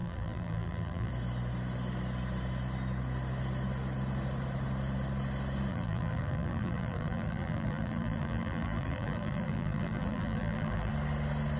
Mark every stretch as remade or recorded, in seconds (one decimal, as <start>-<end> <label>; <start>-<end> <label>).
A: 0.0-1.1 remade; 1.1-5.7 recorded; 5.7-10.9 remade; 10.9-11.6 recorded